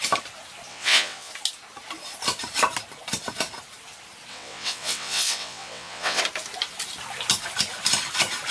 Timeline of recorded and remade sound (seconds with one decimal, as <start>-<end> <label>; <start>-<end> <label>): 0.0-0.7 recorded; 0.7-1.3 remade; 1.3-4.3 recorded; 4.3-6.2 remade; 6.2-8.5 recorded